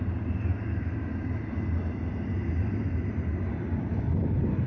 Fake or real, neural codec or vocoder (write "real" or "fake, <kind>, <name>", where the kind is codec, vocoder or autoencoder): real